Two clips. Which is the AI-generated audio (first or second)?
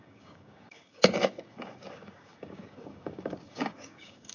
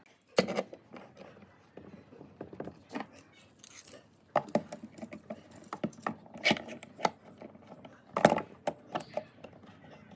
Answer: first